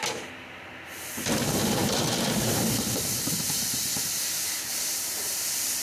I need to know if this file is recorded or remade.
remade